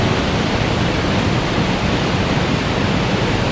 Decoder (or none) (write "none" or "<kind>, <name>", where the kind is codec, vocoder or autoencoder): none